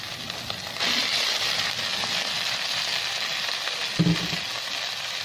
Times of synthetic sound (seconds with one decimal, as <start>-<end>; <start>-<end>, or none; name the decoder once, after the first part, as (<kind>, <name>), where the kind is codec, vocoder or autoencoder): none